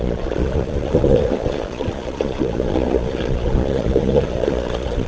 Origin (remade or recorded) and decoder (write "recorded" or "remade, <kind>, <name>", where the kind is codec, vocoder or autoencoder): remade, vocoder, Vocos